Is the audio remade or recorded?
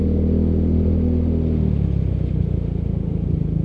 recorded